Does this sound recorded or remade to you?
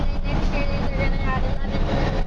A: recorded